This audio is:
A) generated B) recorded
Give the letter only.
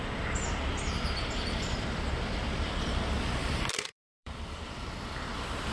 A